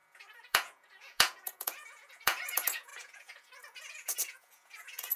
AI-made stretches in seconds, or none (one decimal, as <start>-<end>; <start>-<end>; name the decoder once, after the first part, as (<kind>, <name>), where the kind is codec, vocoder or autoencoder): 0.0-5.2 (vocoder, Vocos)